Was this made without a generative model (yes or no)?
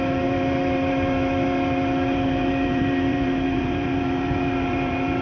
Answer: no